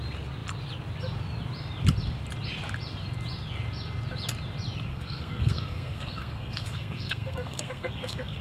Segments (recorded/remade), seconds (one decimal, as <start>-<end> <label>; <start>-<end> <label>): 0.0-4.9 recorded; 4.9-8.4 remade